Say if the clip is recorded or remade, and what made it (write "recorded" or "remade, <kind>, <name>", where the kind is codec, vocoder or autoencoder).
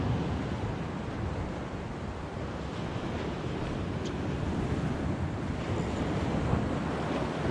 recorded